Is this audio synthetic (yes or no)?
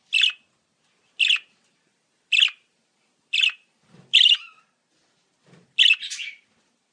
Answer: no